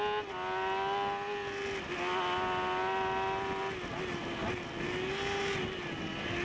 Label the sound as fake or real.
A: real